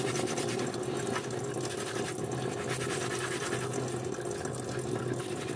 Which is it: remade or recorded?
recorded